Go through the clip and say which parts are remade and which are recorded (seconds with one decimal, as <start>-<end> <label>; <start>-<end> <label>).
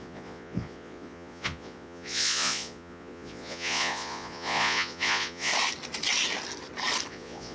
0.0-5.5 remade; 5.5-7.1 recorded; 7.1-7.5 remade